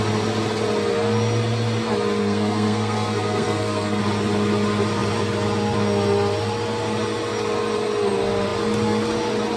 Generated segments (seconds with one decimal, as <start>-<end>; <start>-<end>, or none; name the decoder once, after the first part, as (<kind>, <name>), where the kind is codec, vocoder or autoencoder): 2.2-4.0 (codec, SNAC)